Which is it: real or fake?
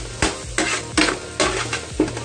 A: real